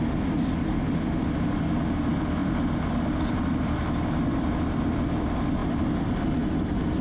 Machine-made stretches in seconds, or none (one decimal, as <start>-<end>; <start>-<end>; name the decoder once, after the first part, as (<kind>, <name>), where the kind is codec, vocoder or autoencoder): none